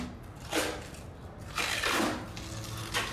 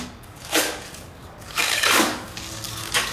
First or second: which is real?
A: first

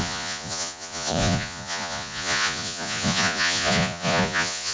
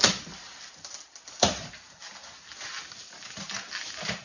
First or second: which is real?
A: second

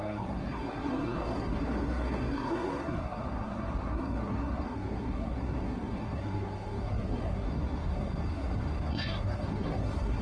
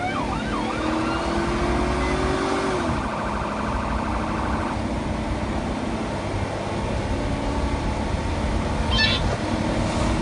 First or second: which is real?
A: second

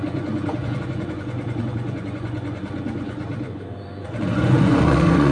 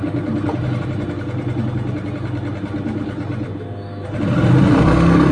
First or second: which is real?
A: second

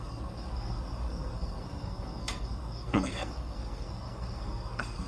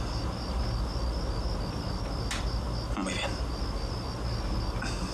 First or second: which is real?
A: second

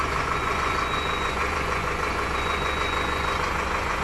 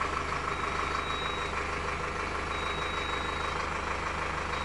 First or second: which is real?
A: second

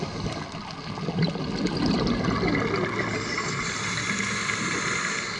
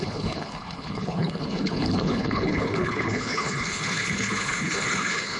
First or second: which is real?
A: first